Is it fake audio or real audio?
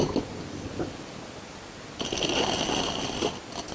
real